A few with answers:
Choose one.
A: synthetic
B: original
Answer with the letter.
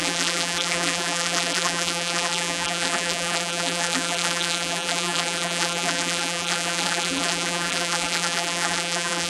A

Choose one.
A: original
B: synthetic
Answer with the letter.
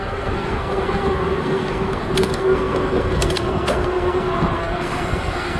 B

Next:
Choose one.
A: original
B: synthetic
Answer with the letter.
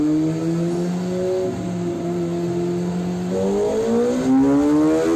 A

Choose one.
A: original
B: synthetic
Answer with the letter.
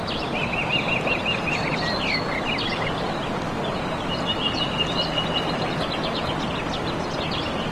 A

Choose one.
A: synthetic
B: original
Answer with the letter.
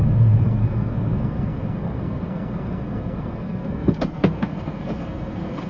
A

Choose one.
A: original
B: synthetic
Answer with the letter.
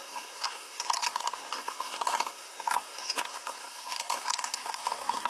B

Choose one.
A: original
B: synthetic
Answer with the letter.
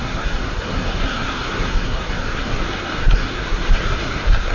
B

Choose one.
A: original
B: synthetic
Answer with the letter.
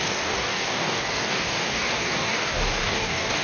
B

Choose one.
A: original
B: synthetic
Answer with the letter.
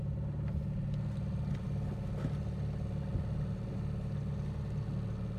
A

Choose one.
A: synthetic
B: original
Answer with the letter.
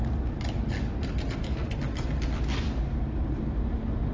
B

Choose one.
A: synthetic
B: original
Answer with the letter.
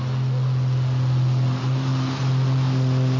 B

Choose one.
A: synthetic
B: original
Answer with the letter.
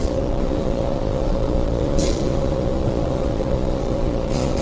A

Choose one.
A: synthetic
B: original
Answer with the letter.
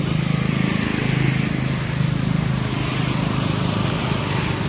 B